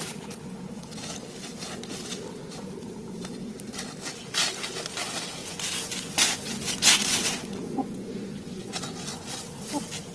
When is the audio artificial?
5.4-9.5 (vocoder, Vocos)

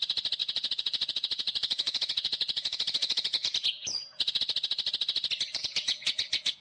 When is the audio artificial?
0.4-4.4 (vocoder, Vocos); 5.5-6.6

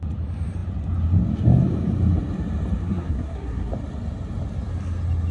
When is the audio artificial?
2.8-3.7 (codec, SNAC)